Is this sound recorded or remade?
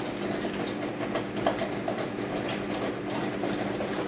recorded